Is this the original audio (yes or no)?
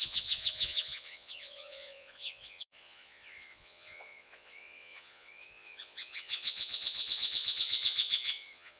no